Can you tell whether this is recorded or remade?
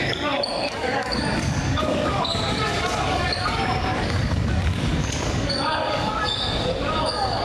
remade